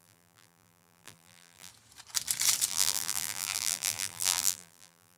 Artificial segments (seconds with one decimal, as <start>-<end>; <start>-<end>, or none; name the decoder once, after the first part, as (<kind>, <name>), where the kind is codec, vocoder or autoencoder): 0.0-1.7 (vocoder, BigVGAN v2); 2.7-5.2